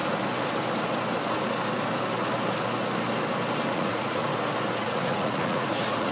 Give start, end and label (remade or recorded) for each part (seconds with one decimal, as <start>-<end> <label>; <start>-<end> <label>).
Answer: 0.0-3.7 recorded; 3.7-4.3 remade; 4.3-4.8 recorded; 4.8-6.1 remade